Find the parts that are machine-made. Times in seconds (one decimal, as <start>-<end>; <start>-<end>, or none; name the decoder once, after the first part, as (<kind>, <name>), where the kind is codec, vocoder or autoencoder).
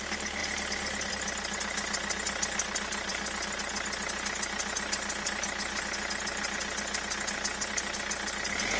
none